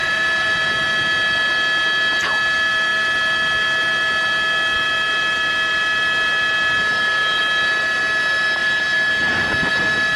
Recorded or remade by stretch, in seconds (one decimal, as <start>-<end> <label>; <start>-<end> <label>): 0.0-0.8 remade; 0.8-10.2 recorded